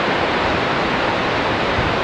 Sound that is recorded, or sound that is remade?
recorded